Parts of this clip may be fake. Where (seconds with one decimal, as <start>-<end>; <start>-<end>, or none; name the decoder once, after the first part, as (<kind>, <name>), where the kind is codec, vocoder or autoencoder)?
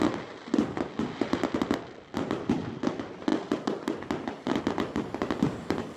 none